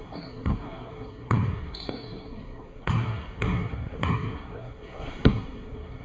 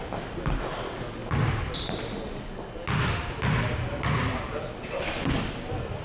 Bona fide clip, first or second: second